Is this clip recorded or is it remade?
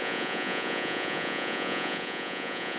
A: remade